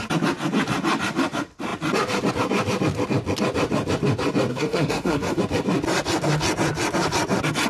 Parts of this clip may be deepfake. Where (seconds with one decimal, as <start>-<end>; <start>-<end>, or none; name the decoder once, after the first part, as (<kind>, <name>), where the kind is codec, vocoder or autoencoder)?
4.5-5.4 (codec, SNAC)